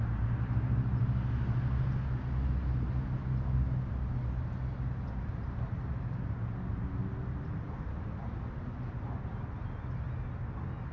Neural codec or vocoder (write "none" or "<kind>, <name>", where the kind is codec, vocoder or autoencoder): none